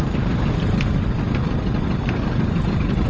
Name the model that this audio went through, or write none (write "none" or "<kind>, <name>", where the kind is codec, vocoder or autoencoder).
none